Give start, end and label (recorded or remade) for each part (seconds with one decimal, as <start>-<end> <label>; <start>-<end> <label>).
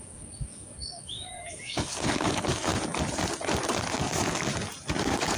0.0-2.7 remade; 2.7-5.0 recorded; 5.0-5.4 remade